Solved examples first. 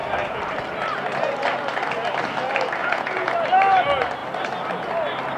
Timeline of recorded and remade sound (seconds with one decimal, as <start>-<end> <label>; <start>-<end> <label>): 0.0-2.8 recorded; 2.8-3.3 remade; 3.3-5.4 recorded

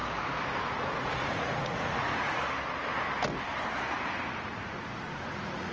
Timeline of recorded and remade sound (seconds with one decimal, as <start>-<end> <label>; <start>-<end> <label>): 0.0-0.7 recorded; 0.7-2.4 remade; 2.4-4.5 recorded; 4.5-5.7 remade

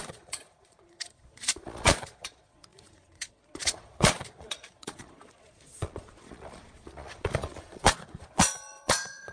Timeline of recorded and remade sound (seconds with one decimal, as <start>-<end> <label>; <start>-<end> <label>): 0.0-9.3 remade

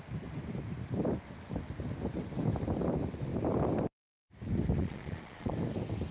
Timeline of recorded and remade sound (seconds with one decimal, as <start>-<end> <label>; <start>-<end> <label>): 0.0-4.8 recorded; 4.8-5.5 remade; 5.5-6.1 recorded

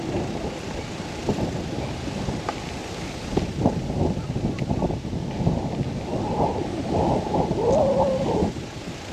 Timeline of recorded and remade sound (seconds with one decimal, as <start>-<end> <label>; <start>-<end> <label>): 0.0-9.1 recorded